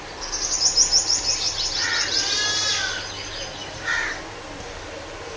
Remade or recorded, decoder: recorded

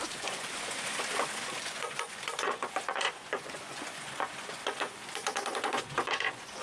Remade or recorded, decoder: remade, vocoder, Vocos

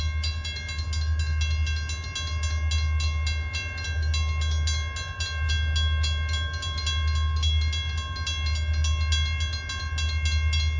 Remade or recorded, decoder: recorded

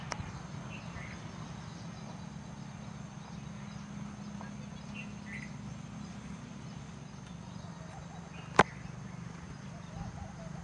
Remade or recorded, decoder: recorded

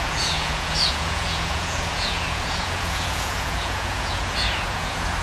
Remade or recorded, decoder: remade, vocoder, Vocos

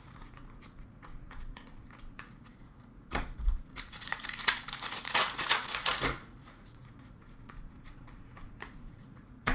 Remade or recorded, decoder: remade, vocoder, Vocos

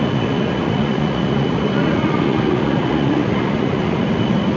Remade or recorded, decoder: remade, vocoder, Vocos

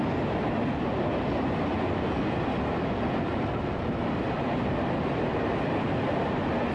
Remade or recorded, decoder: recorded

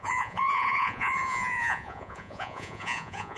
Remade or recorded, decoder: remade, vocoder, Vocos